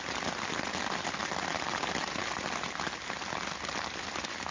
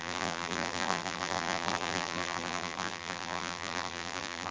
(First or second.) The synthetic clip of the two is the second